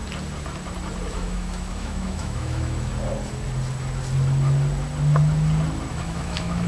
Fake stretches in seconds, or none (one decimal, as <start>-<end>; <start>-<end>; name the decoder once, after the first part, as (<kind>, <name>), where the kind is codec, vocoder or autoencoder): 1.1-2.9 (autoencoder, DAC-VAE); 5.9-6.7